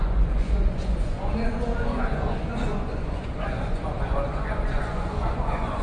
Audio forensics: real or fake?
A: fake